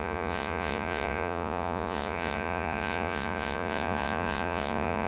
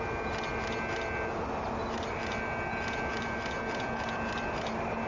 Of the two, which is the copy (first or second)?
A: first